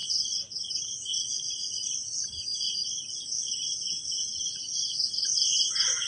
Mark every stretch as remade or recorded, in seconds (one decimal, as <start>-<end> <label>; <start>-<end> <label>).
0.0-1.3 recorded; 1.3-5.0 remade; 5.0-6.1 recorded